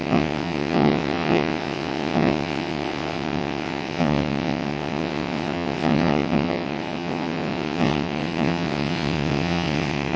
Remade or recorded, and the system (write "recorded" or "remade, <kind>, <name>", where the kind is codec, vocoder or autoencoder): remade, vocoder, WaveNeXt